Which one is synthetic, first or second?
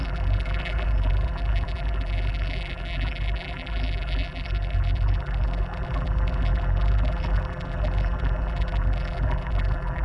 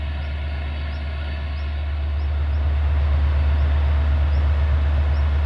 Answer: first